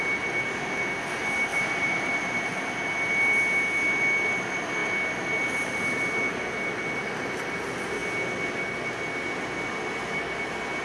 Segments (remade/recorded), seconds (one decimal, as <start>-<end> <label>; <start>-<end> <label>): 0.0-1.5 recorded; 1.5-2.4 remade; 2.4-10.8 recorded